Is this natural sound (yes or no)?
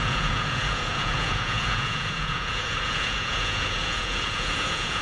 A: no